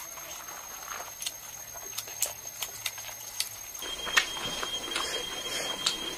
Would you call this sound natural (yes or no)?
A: yes